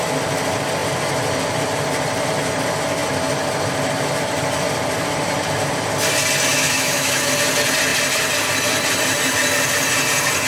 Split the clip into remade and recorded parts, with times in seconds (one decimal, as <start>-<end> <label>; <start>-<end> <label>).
0.0-6.5 recorded; 6.5-7.3 remade; 7.3-10.5 recorded